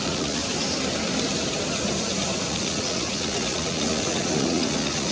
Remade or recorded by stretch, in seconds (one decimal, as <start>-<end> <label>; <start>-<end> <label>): 0.0-0.4 remade; 0.4-2.5 recorded; 2.5-5.1 remade